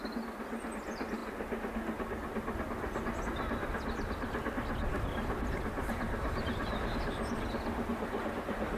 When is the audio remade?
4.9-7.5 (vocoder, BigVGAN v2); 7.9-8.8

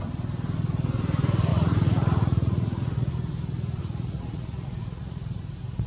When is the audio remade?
1.5-3.1 (vocoder, Vocos); 3.8-5.4

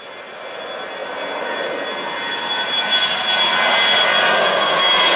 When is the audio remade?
none

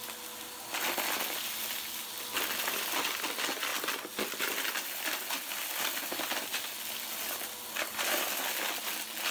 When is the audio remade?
none

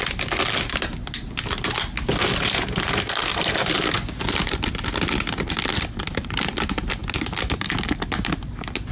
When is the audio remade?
none